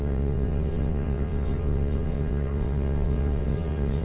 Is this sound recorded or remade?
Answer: remade